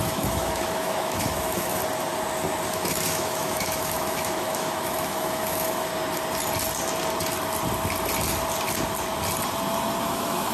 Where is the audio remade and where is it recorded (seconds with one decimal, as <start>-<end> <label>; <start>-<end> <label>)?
0.0-1.8 remade; 1.8-2.7 recorded; 2.7-5.9 remade; 5.9-10.0 recorded; 10.0-10.5 remade